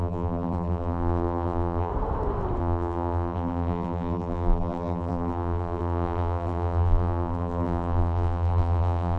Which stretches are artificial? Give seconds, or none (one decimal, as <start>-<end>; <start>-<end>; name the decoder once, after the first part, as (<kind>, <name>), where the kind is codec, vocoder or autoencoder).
0.0-1.9 (vocoder, BigVGAN v2); 2.6-9.2